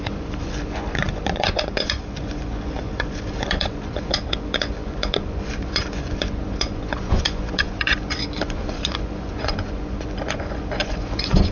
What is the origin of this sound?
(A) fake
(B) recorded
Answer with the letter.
A